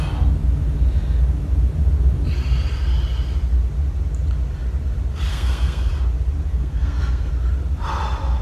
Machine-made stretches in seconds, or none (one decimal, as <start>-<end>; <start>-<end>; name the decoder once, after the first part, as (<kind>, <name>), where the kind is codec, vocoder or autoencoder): 5.3-5.9 (codec, SNAC); 6.5-7.3